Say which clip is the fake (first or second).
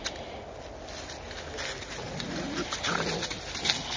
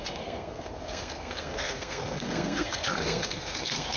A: second